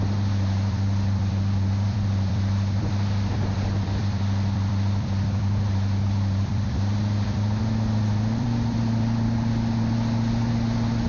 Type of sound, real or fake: fake